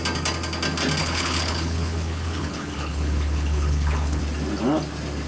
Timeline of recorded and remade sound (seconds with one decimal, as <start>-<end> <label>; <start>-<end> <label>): 0.0-1.0 recorded; 1.0-4.2 remade; 4.2-5.3 recorded